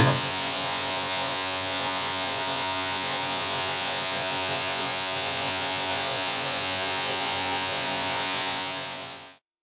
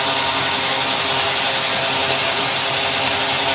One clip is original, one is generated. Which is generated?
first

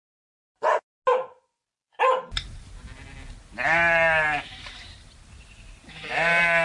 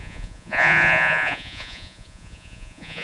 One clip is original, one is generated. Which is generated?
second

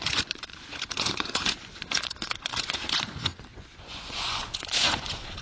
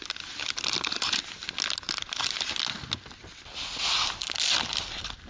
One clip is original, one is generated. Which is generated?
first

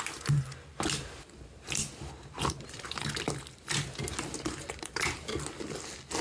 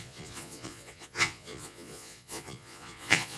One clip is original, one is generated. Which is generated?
second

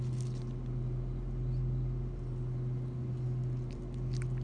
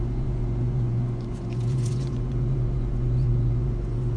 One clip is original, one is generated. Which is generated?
second